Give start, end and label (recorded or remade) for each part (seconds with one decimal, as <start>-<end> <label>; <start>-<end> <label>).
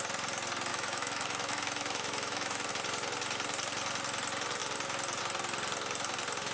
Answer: 0.0-0.7 recorded; 0.7-2.7 remade; 2.7-6.5 recorded